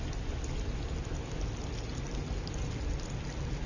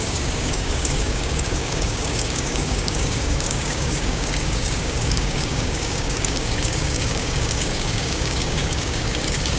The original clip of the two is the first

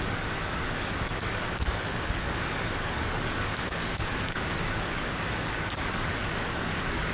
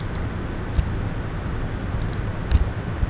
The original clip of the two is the second